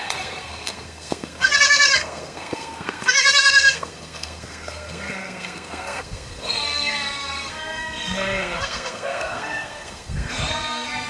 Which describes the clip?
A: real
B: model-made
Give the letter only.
B